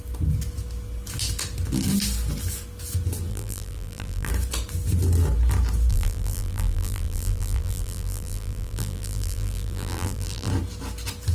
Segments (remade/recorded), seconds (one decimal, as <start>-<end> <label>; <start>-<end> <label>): 0.0-3.3 recorded; 3.3-4.3 remade; 4.3-5.9 recorded; 5.9-10.5 remade; 10.5-11.3 recorded